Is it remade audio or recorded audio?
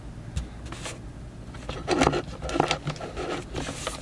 recorded